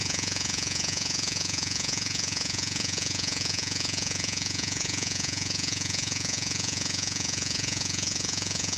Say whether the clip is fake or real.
fake